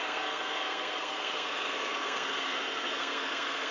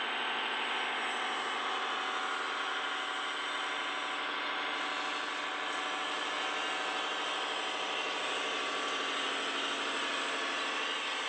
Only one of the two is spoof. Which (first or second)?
first